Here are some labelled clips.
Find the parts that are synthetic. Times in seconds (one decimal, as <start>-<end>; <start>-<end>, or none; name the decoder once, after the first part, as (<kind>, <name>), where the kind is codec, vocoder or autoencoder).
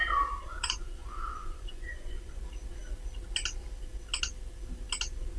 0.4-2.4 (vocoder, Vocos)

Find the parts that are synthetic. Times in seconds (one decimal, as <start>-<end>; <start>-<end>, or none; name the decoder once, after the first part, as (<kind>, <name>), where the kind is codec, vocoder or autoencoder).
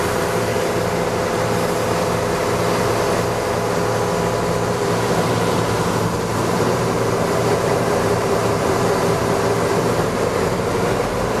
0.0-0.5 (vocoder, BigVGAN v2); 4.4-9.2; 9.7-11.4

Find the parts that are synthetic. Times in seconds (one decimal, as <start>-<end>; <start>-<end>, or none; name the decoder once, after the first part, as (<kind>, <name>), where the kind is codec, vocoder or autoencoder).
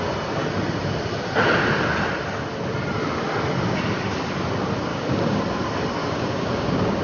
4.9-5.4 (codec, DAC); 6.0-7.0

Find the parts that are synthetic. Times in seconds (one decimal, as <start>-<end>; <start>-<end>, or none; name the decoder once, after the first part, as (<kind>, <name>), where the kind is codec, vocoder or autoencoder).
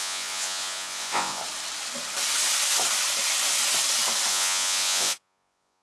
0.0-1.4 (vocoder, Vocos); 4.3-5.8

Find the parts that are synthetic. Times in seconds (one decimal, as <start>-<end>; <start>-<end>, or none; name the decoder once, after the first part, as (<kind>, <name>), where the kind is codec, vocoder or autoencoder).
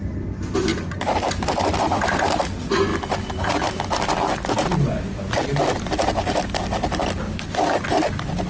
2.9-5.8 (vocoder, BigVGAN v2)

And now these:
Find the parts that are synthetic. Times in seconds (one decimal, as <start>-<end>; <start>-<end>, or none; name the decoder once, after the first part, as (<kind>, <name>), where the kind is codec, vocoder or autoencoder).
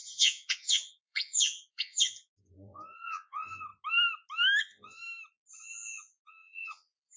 0.0-3.7 (vocoder, Vocos); 4.6-5.0; 5.6-7.2